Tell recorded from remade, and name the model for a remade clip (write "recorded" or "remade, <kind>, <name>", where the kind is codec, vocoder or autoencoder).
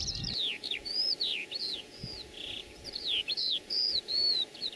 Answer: remade, vocoder, Vocos